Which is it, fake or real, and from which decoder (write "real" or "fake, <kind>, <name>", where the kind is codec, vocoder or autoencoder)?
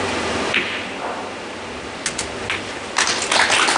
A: real